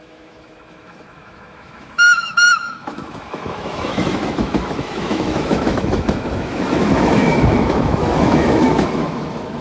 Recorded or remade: remade